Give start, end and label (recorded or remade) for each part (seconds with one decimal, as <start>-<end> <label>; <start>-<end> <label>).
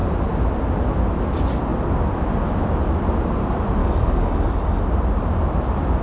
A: 0.0-3.8 recorded; 3.8-4.8 remade; 4.8-6.0 recorded